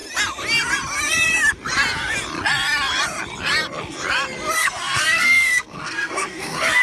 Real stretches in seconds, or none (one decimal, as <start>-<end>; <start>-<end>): 0.0-4.6